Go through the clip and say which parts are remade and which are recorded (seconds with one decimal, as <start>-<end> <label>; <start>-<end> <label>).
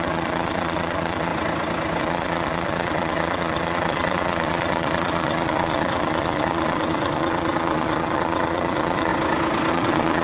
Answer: 0.0-1.3 remade; 1.3-2.0 recorded; 2.0-9.1 remade; 9.1-9.7 recorded; 9.7-10.2 remade